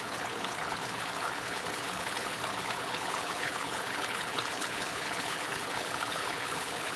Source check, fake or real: fake